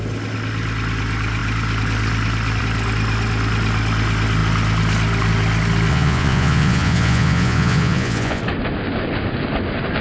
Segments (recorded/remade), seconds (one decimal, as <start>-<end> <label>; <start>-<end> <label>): 0.0-5.9 recorded; 5.9-8.4 remade; 8.4-10.0 recorded

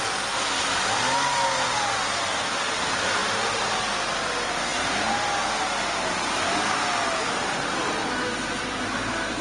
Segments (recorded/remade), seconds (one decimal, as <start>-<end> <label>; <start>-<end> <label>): 0.0-9.4 recorded

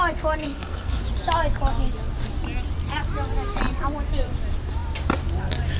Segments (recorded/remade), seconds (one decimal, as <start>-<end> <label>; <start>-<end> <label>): 0.0-0.4 recorded; 0.4-1.0 remade; 1.0-5.8 recorded

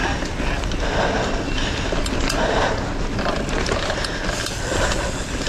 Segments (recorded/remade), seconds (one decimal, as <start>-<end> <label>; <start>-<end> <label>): 0.0-5.5 recorded

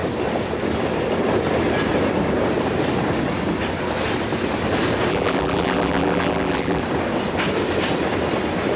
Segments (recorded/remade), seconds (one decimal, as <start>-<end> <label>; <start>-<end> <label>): 0.0-5.1 recorded; 5.1-6.8 remade; 6.8-8.8 recorded